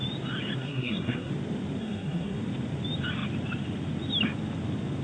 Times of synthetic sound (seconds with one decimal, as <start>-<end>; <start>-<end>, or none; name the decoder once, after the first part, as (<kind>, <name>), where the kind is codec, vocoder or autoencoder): 0.6-1.3 (codec, SNAC); 1.8-2.4